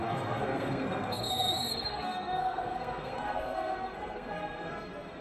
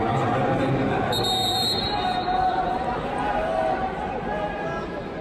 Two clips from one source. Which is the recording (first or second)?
second